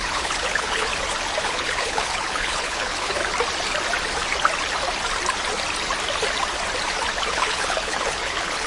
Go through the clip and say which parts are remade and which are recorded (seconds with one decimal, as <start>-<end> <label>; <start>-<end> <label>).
0.0-0.9 remade; 0.9-1.4 recorded; 1.4-3.2 remade; 3.2-7.3 recorded; 7.3-8.7 remade